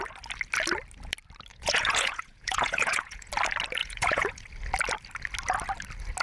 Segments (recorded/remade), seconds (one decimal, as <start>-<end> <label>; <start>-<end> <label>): 0.0-1.5 recorded; 1.5-3.3 remade; 3.3-3.8 recorded; 3.8-4.4 remade; 4.4-6.2 recorded

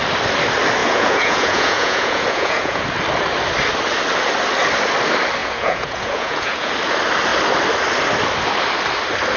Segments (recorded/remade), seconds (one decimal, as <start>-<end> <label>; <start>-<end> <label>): 0.0-0.8 recorded; 0.8-2.8 remade; 2.8-5.4 recorded; 5.4-6.7 remade; 6.7-9.4 recorded

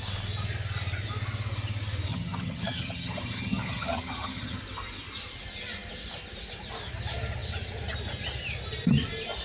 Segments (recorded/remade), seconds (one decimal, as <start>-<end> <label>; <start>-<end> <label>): 0.0-2.1 recorded; 2.1-4.6 remade; 4.6-9.4 recorded

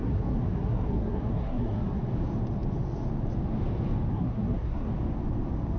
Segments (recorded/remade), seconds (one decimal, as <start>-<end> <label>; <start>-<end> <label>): 0.0-2.0 remade; 2.0-4.1 recorded; 4.1-4.9 remade; 4.9-5.8 recorded

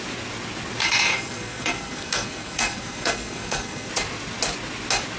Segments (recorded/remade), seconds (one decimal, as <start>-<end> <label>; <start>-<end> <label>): 0.0-0.8 recorded; 0.8-3.9 remade; 3.9-5.2 recorded